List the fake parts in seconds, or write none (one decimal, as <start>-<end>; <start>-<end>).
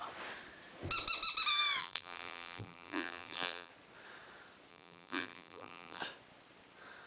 1.8-3.7; 4.7-6.0